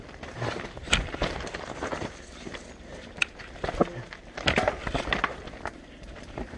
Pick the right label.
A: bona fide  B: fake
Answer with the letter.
A